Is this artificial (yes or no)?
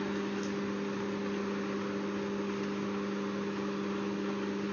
no